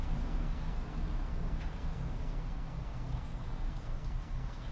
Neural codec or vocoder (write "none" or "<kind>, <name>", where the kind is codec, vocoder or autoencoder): codec, SNAC